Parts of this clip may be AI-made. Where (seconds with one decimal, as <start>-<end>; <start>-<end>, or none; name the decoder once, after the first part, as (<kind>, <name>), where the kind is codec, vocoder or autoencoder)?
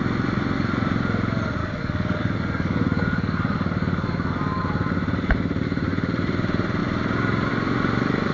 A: 1.6-4.6 (codec, DAC)